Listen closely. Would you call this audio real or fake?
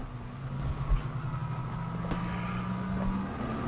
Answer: real